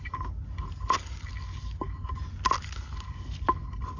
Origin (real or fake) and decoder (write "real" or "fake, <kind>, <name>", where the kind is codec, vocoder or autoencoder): real